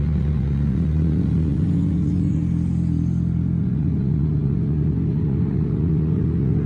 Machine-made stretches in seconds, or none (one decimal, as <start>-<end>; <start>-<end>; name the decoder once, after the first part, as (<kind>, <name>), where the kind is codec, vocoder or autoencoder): 0.0-2.4 (vocoder, Vocos); 3.6-6.7